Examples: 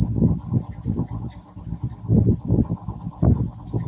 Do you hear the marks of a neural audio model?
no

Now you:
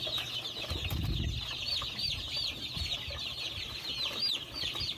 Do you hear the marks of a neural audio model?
no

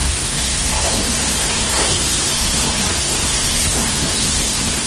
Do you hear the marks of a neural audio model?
yes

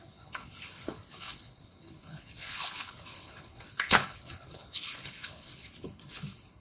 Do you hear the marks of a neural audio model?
yes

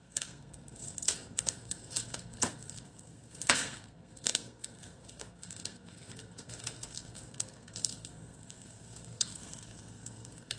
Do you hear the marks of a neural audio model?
yes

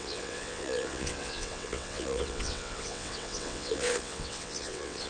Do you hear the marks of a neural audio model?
yes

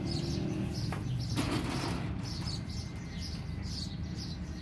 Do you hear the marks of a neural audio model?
no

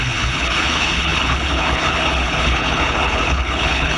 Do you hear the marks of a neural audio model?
yes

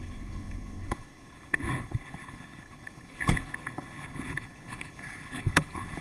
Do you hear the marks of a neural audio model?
yes